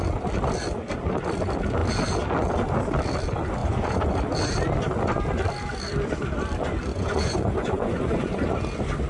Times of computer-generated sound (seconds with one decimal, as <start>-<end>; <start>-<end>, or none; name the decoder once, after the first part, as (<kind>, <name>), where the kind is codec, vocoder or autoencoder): 3.6-4.1 (vocoder, Vocos); 6.9-8.5